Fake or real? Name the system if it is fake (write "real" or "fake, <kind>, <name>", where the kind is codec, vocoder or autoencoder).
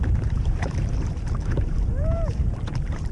fake, vocoder, BigVGAN v2